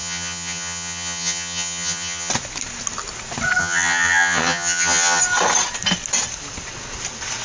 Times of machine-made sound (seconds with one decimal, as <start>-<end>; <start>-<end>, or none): 0.0-2.3; 3.6-5.2